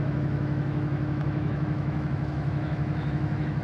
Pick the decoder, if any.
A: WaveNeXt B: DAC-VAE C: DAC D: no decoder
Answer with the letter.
B